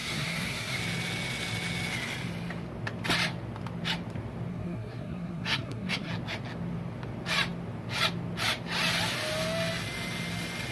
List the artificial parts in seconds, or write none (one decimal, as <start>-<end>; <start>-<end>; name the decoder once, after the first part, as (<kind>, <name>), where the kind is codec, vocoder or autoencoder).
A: 0.0-0.8 (codec, SNAC); 4.5-6.1